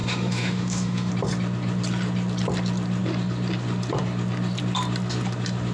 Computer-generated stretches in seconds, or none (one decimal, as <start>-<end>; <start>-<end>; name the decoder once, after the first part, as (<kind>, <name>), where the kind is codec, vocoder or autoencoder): 0.0-1.1 (autoencoder, DAC-VAE)